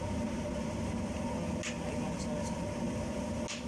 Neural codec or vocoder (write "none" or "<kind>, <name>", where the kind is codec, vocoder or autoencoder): none